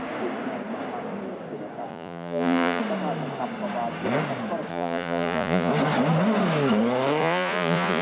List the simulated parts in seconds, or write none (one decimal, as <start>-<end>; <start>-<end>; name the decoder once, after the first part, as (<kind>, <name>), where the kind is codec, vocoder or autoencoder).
1.9-2.8 (vocoder, Vocos); 4.7-5.7; 7.2-8.0